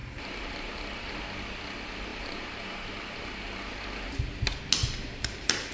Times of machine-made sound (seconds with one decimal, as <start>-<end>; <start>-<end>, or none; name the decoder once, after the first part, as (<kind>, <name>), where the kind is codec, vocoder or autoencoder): 0.0-1.2 (vocoder, BigVGAN v2); 2.1-4.1; 4.8-5.7